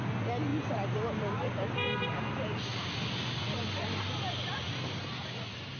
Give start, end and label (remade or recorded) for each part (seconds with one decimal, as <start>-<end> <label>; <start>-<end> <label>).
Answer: 0.0-5.8 recorded